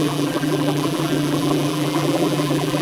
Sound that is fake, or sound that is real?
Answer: fake